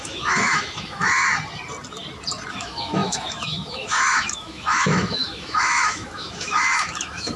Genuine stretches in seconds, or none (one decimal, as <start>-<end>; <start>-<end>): 1.2-2.5